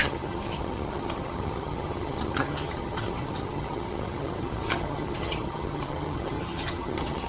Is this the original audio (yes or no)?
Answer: no